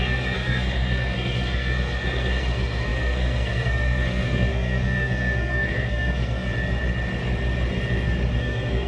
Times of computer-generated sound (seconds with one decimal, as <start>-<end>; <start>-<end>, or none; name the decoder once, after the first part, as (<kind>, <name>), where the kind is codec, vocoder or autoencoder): 0.0-6.5 (codec, SNAC); 8.4-8.9